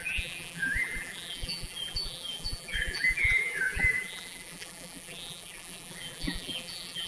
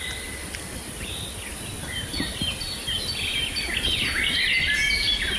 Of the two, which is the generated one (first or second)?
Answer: first